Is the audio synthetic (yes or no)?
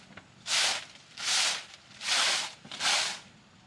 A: yes